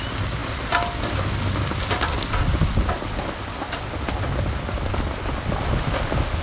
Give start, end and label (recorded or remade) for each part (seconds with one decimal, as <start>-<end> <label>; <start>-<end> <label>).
0.0-6.4 recorded